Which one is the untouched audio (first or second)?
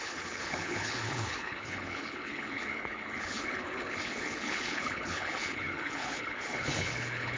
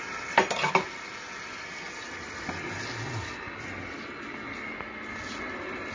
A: second